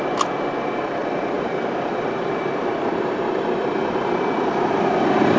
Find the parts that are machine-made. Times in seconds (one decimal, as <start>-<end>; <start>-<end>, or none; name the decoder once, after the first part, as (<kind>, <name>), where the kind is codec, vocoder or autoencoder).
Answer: none